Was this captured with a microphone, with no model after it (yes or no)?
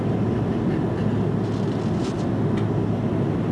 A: yes